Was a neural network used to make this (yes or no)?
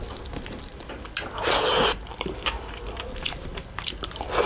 no